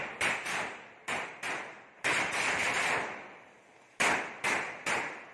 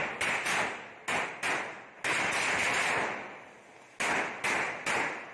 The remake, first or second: first